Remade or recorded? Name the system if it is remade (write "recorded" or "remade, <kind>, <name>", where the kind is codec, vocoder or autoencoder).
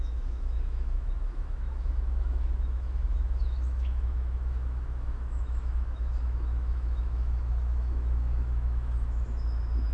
remade, autoencoder, DAC-VAE